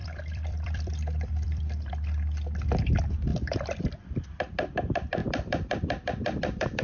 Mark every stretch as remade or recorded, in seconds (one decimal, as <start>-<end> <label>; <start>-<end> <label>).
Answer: 0.0-1.9 remade; 1.9-3.3 recorded; 3.3-4.4 remade; 4.4-5.2 recorded; 5.2-6.8 remade

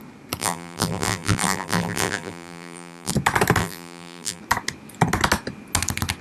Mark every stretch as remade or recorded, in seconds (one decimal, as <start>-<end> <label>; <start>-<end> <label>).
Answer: 0.0-0.4 recorded; 0.4-3.1 remade; 3.1-3.6 recorded; 3.6-4.4 remade; 4.4-6.2 recorded

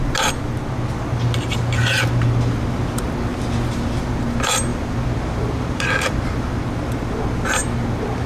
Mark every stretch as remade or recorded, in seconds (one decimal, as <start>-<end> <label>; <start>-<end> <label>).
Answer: 0.0-4.7 recorded; 4.7-6.3 remade; 6.3-8.3 recorded

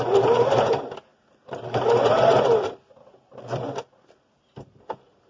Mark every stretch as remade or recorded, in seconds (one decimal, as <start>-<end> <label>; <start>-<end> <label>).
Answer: 0.0-5.3 recorded